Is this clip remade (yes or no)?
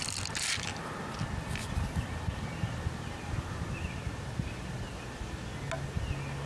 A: no